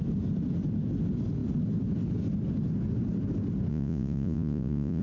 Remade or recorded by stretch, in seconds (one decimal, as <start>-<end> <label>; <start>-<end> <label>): 0.0-3.7 recorded; 3.7-5.0 remade